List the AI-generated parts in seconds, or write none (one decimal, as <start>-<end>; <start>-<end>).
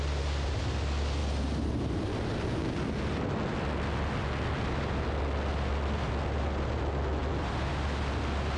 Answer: none